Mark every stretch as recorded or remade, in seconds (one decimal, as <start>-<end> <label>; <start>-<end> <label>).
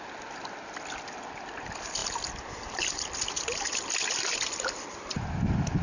0.0-5.8 recorded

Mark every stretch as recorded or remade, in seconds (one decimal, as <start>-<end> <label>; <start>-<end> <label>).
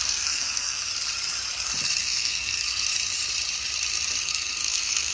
0.0-0.9 remade; 0.9-2.0 recorded; 2.0-2.9 remade; 2.9-4.2 recorded; 4.2-5.1 remade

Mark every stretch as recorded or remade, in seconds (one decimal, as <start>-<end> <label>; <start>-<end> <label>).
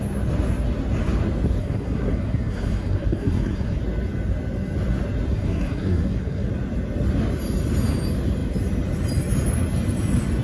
0.0-1.6 recorded; 1.6-3.8 remade; 3.8-5.3 recorded; 5.3-6.5 remade; 6.5-10.4 recorded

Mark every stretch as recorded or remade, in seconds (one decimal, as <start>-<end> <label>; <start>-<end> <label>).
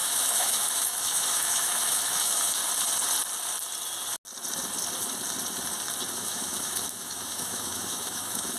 0.0-2.6 remade; 2.6-6.1 recorded; 6.1-8.6 remade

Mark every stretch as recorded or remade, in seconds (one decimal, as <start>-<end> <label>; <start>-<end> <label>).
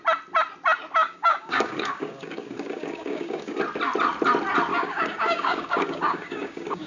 0.0-1.0 recorded; 1.0-3.6 remade; 3.6-4.7 recorded; 4.7-6.9 remade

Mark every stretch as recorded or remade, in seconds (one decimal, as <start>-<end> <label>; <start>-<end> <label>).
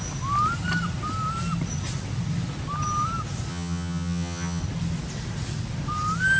0.0-3.5 recorded; 3.5-4.6 remade; 4.6-6.4 recorded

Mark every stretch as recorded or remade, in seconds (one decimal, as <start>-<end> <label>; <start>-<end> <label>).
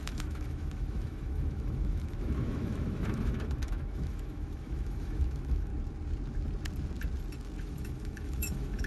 0.0-5.7 remade; 5.7-7.6 recorded; 7.6-8.9 remade